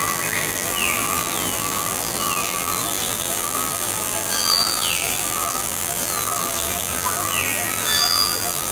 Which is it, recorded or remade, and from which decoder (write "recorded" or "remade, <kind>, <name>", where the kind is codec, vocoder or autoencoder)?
remade, vocoder, BigVGAN v2